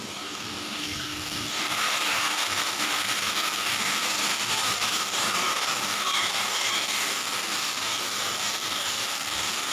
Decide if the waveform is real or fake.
fake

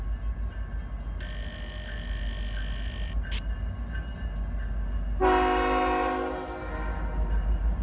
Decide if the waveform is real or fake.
real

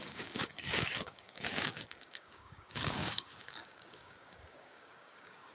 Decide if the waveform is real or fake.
fake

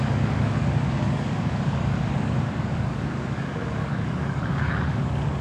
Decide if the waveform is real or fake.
fake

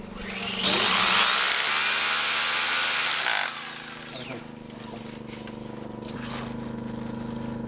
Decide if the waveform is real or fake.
real